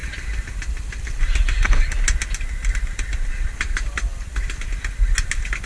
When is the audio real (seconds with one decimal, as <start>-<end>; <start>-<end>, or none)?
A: 0.0-2.9; 4.1-5.7